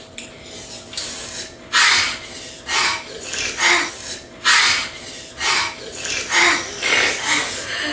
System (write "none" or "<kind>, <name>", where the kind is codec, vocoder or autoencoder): none